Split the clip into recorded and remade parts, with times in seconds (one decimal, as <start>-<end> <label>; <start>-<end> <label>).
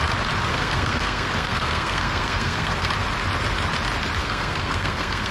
0.0-0.5 recorded; 0.5-2.9 remade; 2.9-4.2 recorded; 4.2-5.3 remade